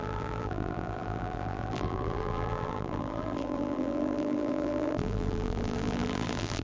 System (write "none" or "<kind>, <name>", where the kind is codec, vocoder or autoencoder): vocoder, BigVGAN v2